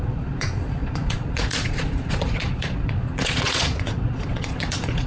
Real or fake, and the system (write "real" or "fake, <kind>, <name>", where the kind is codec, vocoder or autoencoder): fake, vocoder, Vocos